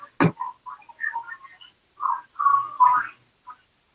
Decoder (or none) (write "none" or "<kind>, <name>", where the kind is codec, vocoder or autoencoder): none